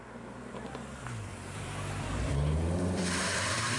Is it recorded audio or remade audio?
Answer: remade